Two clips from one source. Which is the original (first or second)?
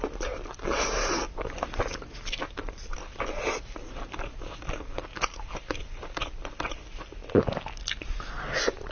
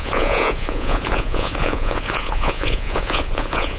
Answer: first